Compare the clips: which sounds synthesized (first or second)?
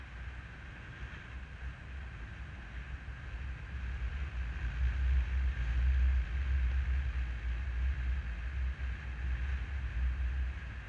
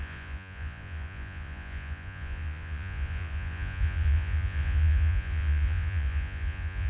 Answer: second